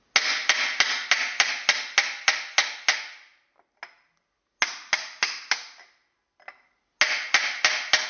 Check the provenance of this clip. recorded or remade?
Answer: recorded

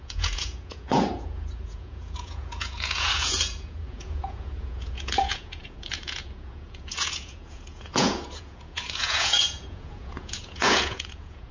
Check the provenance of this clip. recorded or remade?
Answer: remade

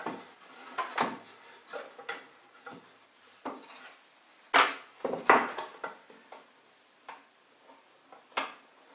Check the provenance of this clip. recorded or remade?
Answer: recorded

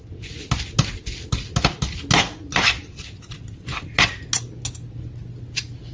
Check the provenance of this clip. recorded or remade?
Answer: recorded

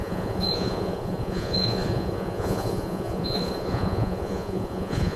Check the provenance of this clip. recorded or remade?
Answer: remade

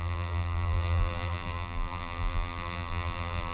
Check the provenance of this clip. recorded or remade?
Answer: remade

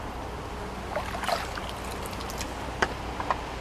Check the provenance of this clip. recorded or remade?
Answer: recorded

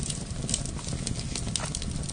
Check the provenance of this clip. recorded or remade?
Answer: recorded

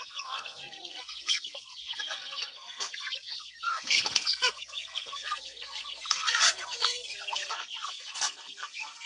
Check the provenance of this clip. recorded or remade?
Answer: remade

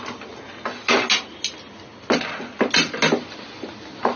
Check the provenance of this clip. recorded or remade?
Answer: recorded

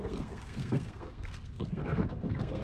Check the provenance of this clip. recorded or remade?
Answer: remade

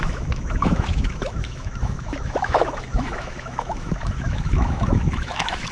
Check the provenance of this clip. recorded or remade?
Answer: remade